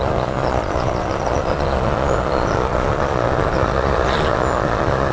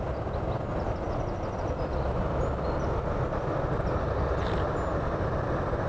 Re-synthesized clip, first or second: first